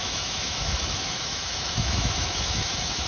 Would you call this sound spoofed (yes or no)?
yes